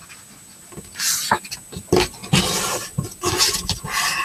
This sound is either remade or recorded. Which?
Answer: recorded